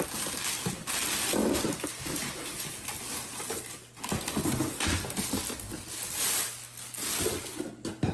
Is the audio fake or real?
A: real